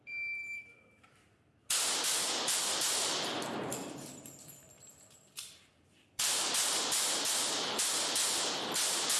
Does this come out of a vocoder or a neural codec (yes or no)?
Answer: yes